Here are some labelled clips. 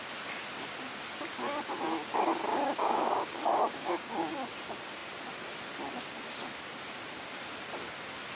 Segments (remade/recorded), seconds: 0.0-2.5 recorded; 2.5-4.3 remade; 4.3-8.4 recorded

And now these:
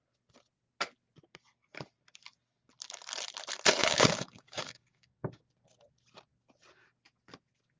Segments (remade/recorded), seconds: 0.0-3.8 recorded; 3.8-5.4 remade; 5.4-7.8 recorded

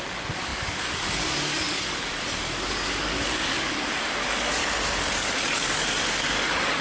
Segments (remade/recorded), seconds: 0.0-4.6 remade; 4.6-5.1 recorded; 5.1-6.8 remade

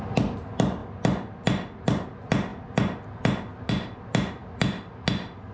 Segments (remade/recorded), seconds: 0.0-5.5 recorded

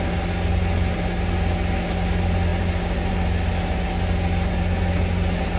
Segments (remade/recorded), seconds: 0.0-5.6 recorded

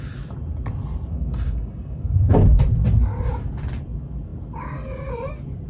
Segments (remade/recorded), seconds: 0.0-1.1 recorded; 1.1-2.3 remade; 2.3-5.7 recorded